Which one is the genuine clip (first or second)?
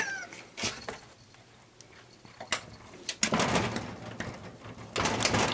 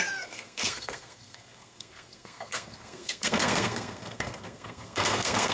first